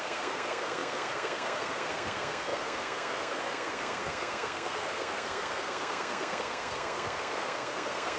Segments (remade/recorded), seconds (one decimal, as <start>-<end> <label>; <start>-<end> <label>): 0.0-8.2 remade